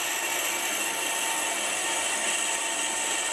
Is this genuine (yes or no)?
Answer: yes